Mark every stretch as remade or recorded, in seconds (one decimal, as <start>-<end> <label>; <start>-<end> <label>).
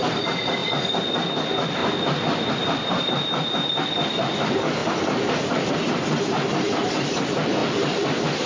0.0-0.6 remade; 0.6-1.1 recorded; 1.1-1.8 remade; 1.8-2.5 recorded; 2.5-8.5 remade